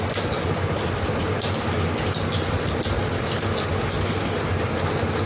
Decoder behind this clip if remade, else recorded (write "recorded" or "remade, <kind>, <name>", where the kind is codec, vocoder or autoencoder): recorded